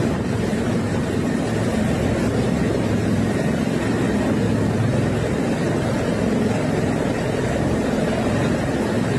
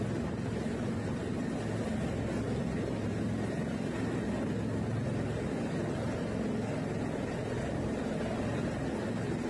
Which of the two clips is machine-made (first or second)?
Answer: first